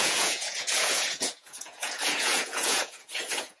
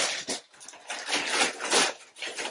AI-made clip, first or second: first